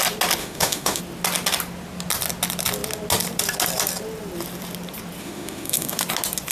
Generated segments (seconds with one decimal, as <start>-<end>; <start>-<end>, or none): 0.4-1.0; 5.2-6.0